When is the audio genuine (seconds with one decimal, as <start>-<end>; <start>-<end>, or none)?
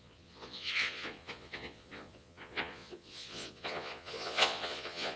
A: none